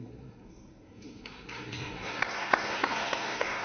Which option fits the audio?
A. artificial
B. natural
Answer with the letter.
A